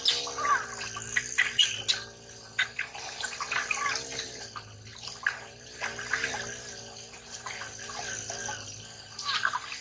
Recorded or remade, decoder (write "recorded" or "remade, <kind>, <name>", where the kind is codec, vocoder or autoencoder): recorded